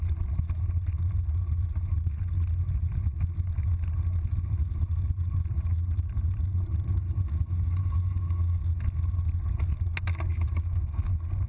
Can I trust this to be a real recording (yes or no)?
yes